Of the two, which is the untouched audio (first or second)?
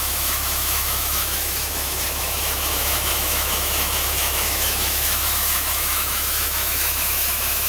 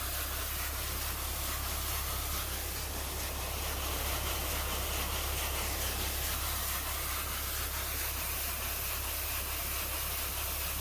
second